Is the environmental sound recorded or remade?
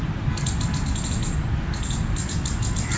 recorded